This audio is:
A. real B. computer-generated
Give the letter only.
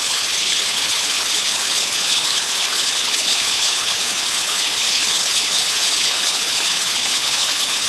B